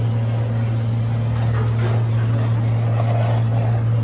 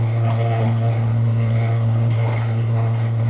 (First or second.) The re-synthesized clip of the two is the second